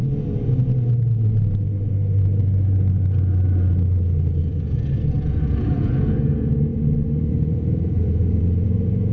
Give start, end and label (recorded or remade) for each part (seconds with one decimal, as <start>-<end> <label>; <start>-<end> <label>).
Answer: 0.0-4.4 recorded; 4.4-9.1 remade